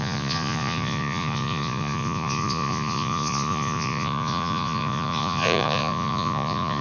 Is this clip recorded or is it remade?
remade